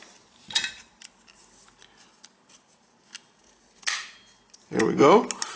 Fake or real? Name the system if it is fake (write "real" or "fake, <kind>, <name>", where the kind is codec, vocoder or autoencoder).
real